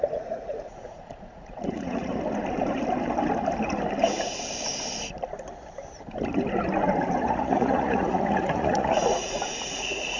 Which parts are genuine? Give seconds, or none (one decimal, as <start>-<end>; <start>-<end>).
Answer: 2.1-7.2